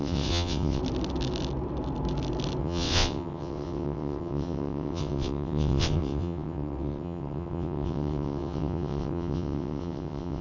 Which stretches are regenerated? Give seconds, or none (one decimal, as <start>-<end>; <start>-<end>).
0.0-0.8; 2.6-10.4